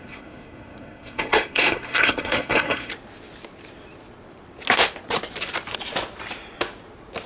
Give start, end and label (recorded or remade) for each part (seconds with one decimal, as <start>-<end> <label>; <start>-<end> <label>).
0.0-2.9 remade; 2.9-7.3 recorded